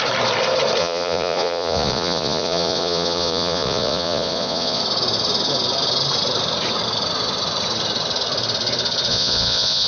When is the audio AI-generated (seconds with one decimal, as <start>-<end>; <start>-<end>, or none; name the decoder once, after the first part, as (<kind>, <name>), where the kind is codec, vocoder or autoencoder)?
0.8-4.8 (vocoder, Vocos); 9.1-9.9